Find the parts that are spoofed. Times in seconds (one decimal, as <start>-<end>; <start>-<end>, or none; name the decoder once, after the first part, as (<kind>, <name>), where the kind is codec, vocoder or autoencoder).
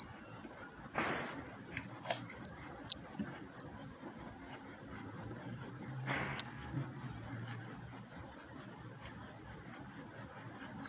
6.0-6.7 (codec, SNAC)